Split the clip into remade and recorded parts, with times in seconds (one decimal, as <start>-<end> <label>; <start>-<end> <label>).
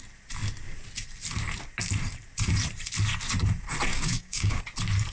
0.0-3.9 recorded; 3.9-4.6 remade; 4.6-5.1 recorded